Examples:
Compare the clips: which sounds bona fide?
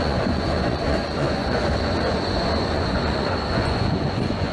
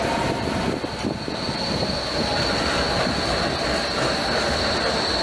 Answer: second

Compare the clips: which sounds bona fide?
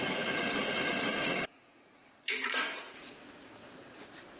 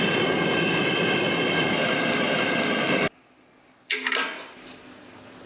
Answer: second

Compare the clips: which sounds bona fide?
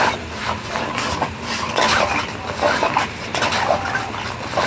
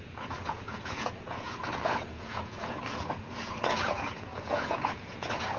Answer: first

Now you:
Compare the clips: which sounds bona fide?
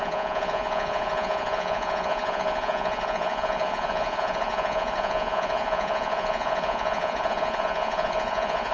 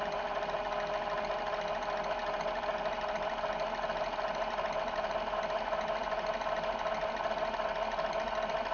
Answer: second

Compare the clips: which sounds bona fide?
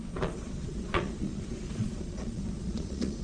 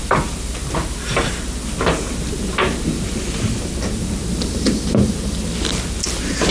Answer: second